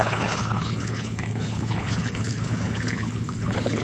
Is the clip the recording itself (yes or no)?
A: no